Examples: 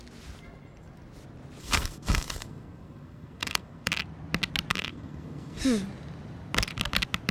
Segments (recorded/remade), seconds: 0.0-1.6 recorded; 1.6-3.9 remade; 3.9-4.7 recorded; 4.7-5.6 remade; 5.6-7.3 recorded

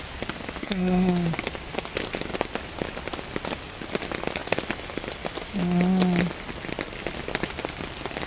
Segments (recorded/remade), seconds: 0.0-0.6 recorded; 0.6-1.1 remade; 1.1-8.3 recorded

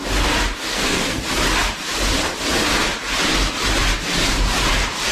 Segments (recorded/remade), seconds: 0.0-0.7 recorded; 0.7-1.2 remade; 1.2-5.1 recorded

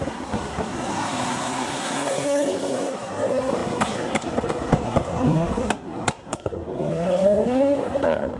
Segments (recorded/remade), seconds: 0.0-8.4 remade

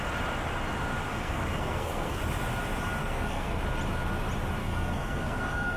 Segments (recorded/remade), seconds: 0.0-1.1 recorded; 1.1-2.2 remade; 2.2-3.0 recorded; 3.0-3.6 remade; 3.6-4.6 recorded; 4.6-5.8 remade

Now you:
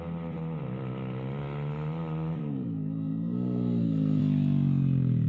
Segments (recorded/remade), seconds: 0.0-2.4 recorded; 2.4-4.2 remade; 4.2-5.3 recorded

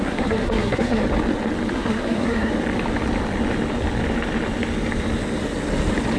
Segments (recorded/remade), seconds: 0.0-1.0 remade; 1.0-1.7 recorded; 1.7-2.5 remade; 2.5-6.2 recorded

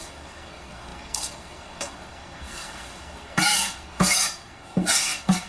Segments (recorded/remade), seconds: 0.0-5.5 remade